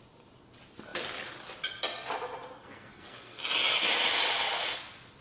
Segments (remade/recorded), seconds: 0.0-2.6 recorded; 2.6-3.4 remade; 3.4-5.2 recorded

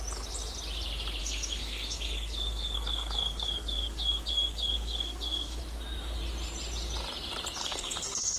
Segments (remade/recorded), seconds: 0.0-1.2 recorded; 1.2-5.6 remade; 5.6-7.6 recorded; 7.6-8.4 remade